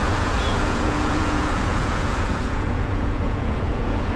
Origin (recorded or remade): remade